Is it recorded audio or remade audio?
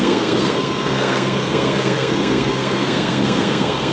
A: remade